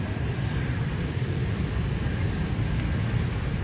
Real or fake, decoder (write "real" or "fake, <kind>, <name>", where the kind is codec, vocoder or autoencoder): fake, vocoder, BigVGAN v2